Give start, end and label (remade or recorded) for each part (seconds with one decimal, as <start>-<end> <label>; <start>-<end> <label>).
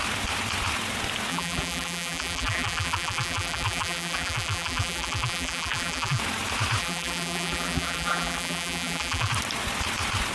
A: 0.0-1.3 recorded; 1.3-6.2 remade; 6.2-6.8 recorded; 6.8-9.3 remade; 9.3-10.3 recorded